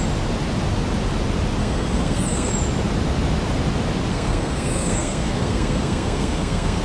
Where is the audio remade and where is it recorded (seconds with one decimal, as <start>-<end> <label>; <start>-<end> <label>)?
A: 0.0-1.6 recorded; 1.6-2.5 remade; 2.5-4.1 recorded; 4.1-6.8 remade

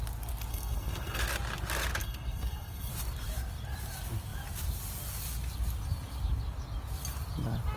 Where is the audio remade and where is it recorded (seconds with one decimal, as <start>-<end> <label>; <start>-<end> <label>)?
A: 0.0-0.5 recorded; 0.5-1.2 remade; 1.2-2.0 recorded; 2.0-2.9 remade; 2.9-7.8 recorded

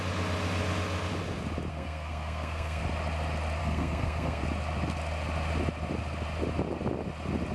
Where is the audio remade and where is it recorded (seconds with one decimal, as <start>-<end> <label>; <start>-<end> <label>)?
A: 0.0-1.7 recorded; 1.7-2.8 remade; 2.8-3.6 recorded; 3.6-4.4 remade; 4.4-7.5 recorded

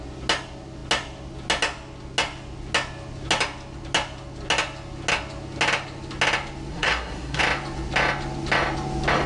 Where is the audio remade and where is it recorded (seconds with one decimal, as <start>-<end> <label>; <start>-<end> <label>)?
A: 0.0-6.7 recorded; 6.7-7.4 remade; 7.4-9.3 recorded

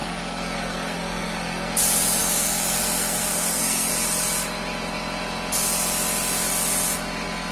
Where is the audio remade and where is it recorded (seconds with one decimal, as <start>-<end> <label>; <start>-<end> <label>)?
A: 0.0-1.7 remade; 1.7-2.2 recorded; 2.2-3.9 remade; 3.9-7.5 recorded

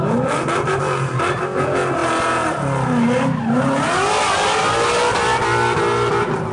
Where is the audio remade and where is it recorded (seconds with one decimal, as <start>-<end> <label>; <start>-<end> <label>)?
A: 0.0-6.5 recorded

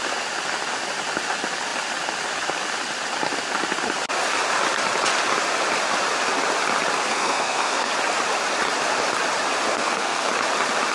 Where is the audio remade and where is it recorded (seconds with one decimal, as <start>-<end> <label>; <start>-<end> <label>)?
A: 0.0-7.1 recorded; 7.1-7.9 remade; 7.9-9.7 recorded; 9.7-10.3 remade; 10.3-10.9 recorded

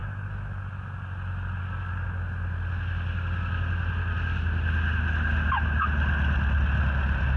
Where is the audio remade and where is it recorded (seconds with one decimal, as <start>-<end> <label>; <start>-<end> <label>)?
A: 0.0-7.4 recorded